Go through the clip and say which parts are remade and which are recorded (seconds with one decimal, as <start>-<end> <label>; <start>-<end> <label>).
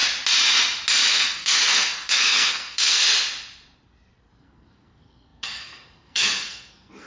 0.0-1.1 recorded; 1.1-3.0 remade; 3.0-4.4 recorded; 4.4-7.1 remade